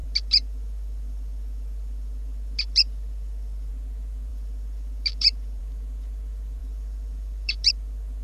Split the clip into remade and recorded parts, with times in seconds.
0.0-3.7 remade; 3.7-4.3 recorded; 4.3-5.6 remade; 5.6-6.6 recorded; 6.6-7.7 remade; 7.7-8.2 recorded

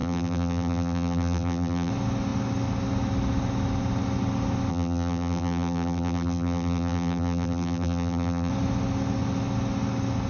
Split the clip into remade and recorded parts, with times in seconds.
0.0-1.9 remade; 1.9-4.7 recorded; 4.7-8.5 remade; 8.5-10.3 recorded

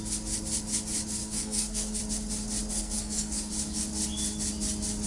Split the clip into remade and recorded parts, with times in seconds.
0.0-1.2 recorded; 1.2-2.0 remade; 2.0-2.7 recorded; 2.7-3.5 remade; 3.5-5.1 recorded

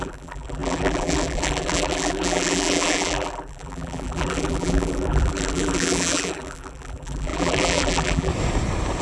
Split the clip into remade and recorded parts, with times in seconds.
0.0-8.3 remade; 8.3-9.0 recorded